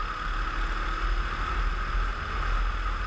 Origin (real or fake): real